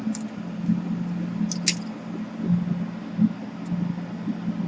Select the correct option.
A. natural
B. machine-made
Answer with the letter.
A